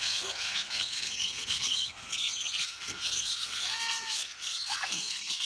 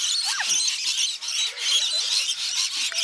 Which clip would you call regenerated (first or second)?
first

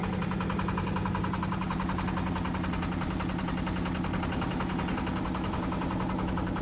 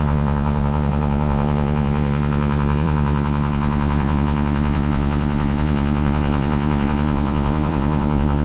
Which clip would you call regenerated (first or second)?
second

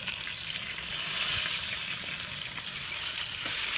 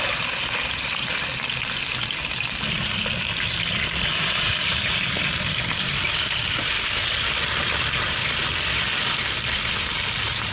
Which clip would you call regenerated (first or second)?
second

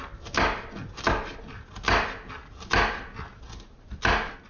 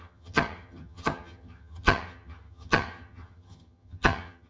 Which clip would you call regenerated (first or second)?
second